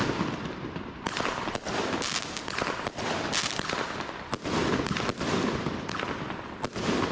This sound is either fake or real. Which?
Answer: fake